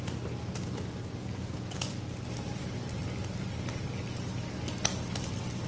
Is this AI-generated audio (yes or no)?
no